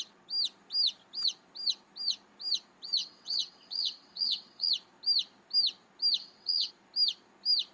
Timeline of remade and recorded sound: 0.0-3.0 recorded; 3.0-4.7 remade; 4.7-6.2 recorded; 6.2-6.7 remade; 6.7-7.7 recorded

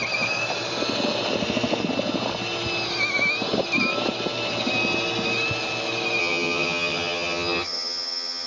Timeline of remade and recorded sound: 0.0-6.2 recorded; 6.2-8.5 remade

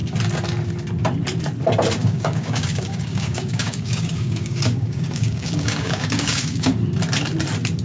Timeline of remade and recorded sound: 0.0-2.0 recorded; 2.0-6.7 remade; 6.7-7.8 recorded